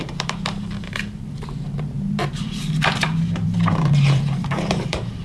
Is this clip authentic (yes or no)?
no